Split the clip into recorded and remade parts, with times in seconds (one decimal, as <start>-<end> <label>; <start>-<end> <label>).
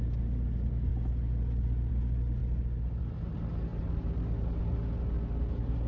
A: 0.0-5.9 recorded